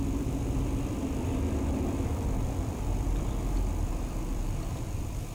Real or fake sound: fake